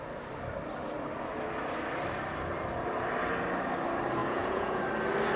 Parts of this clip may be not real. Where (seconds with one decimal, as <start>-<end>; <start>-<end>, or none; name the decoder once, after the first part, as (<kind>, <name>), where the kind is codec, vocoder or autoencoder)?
4.2-4.8 (vocoder, Vocos)